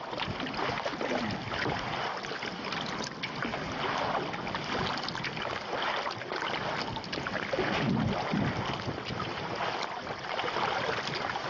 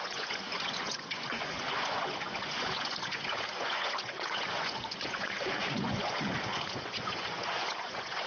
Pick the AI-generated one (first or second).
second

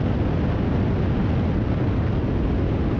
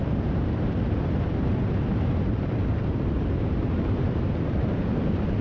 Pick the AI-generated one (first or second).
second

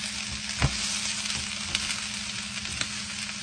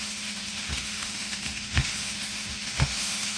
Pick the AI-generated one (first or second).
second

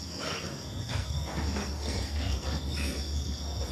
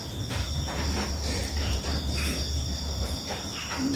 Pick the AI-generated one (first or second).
first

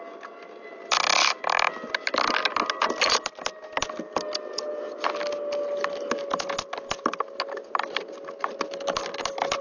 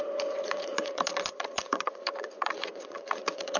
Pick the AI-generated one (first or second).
second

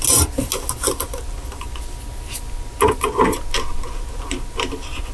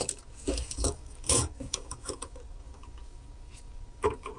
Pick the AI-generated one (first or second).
second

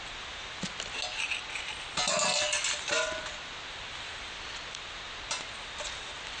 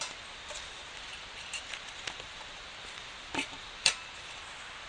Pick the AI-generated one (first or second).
second